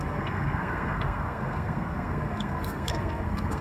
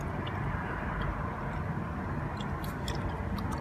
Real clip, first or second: second